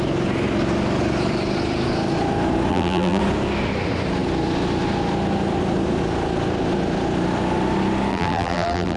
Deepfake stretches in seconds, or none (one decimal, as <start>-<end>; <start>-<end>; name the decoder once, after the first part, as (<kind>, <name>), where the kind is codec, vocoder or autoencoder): 2.7-3.2 (vocoder, BigVGAN v2); 8.1-9.0